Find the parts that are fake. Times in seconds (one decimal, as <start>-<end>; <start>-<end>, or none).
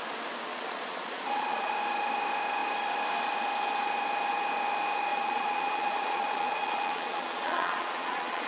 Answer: 0.5-1.7; 5.1-8.5